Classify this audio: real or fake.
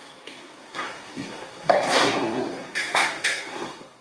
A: fake